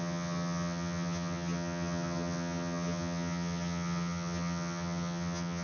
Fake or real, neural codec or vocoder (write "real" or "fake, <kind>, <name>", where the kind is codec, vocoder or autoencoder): fake, vocoder, HiFi-GAN